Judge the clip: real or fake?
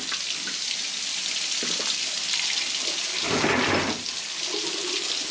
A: real